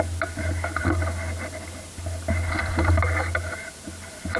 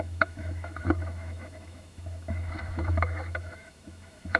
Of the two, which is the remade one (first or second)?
second